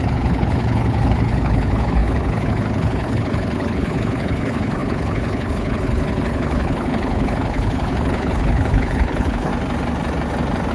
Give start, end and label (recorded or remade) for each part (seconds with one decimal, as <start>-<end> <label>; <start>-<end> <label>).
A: 0.0-9.5 remade; 9.5-10.7 recorded